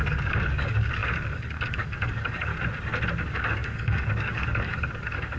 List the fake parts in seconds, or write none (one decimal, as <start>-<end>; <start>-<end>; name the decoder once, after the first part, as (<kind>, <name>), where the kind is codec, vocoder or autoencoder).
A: 0.0-2.5 (codec, DAC); 3.2-5.4